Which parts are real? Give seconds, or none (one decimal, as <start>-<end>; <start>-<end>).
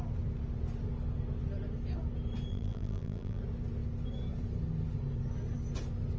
0.0-2.5; 3.4-6.2